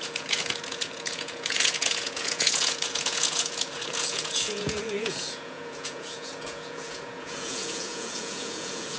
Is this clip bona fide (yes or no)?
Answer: no